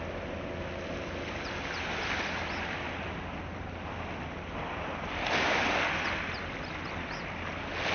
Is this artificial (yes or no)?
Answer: no